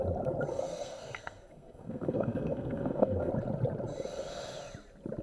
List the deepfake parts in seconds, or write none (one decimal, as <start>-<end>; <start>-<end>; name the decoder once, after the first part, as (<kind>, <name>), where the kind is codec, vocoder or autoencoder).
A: 0.5-3.3 (codec, SNAC)